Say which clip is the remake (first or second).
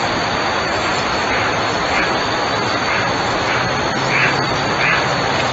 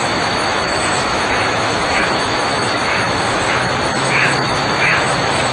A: second